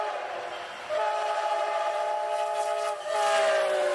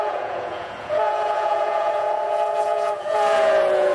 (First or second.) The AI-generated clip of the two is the second